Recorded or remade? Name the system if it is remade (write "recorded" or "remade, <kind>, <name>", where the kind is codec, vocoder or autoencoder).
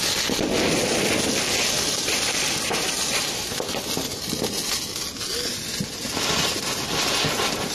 recorded